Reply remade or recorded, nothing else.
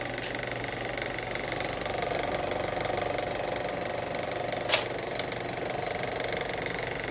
recorded